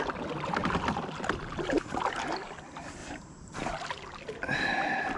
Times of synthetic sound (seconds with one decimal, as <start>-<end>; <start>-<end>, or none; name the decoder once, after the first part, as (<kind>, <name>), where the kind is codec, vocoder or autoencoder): none